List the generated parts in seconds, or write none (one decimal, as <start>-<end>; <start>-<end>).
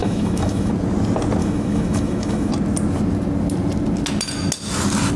0.0-0.7; 1.4-2.5